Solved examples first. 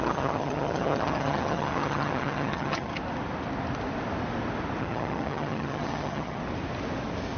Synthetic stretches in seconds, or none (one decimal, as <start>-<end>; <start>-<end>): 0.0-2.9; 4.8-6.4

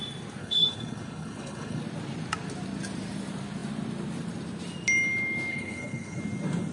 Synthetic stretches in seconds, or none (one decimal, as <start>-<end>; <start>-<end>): 0.4-1.8; 5.5-6.2

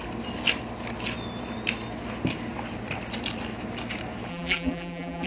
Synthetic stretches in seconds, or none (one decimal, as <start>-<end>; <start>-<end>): 4.3-5.3

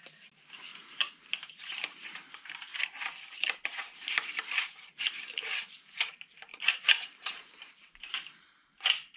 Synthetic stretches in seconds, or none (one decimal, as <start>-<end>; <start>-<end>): 0.0-2.7; 3.3-9.2